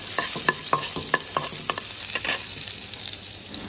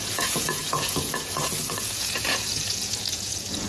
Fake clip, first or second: second